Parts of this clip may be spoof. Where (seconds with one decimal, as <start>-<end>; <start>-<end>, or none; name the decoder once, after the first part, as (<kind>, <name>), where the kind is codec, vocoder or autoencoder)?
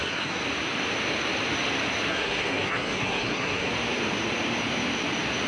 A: 0.0-0.4 (codec, SNAC); 2.1-3.7